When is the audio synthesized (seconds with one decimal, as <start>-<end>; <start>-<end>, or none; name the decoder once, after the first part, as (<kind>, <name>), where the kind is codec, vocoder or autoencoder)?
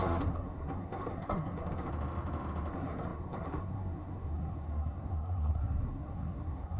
0.0-1.9 (codec, SNAC); 2.7-6.8